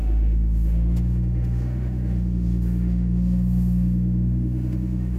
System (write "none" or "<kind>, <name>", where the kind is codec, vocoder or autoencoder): autoencoder, DAC-VAE